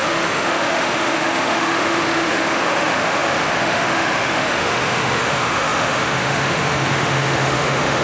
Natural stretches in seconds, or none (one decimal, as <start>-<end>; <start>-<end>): none